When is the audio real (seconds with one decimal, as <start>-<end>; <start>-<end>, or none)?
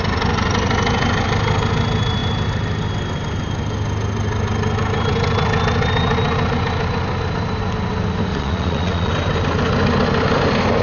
0.0-8.3; 9.1-10.8